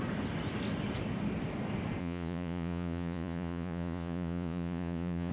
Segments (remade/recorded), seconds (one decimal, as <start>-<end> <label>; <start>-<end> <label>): 0.0-2.0 recorded; 2.0-5.3 remade